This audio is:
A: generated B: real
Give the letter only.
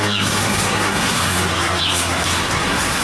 A